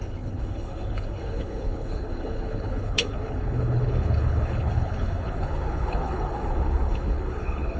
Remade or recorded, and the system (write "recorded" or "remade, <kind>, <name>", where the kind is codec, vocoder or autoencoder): remade, codec, HILCodec